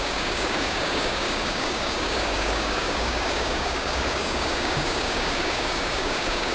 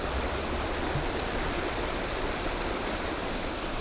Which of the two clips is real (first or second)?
second